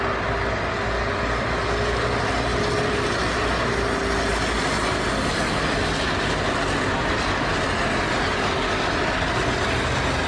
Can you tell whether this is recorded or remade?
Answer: recorded